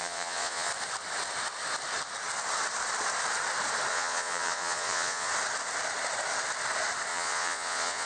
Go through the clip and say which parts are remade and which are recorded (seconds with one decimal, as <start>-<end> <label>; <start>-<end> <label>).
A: 0.0-0.7 remade; 0.7-3.9 recorded; 3.9-5.3 remade; 5.3-7.1 recorded; 7.1-8.1 remade